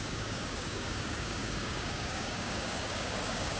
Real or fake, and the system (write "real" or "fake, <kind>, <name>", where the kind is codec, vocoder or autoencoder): fake, codec, DAC